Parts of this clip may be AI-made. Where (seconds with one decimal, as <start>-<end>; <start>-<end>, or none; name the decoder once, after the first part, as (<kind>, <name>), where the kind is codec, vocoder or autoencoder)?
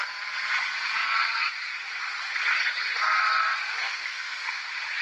3.8-4.6 (codec, SNAC)